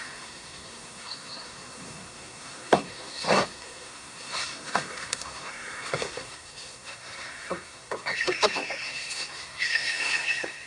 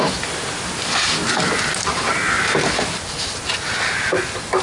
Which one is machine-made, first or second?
first